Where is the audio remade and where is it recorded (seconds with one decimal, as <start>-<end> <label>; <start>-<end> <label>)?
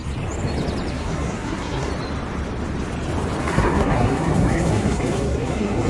0.0-0.9 recorded; 0.9-1.9 remade; 1.9-3.4 recorded; 3.4-5.9 remade